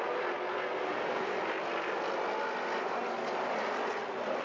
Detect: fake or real real